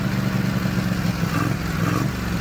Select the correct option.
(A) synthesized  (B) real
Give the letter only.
B